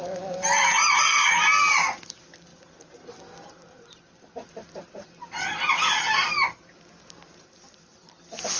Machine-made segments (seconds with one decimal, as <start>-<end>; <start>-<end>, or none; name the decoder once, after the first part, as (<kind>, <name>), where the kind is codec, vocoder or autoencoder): none